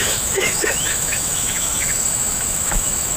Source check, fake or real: fake